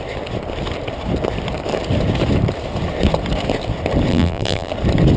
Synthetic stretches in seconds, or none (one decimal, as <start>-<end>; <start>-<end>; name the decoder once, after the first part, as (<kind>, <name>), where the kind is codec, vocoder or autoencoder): 4.1-4.7 (vocoder, BigVGAN v2)